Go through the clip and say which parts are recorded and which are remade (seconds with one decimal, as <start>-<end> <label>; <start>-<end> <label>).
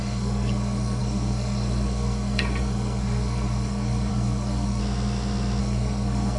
0.0-4.8 remade; 4.8-5.6 recorded; 5.6-6.4 remade